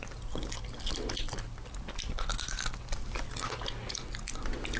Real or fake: real